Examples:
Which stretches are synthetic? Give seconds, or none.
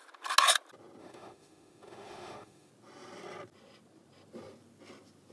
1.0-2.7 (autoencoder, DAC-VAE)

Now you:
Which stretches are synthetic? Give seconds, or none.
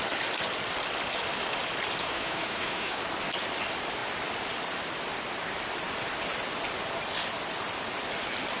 2.0-3.0 (autoencoder, DAC-VAE)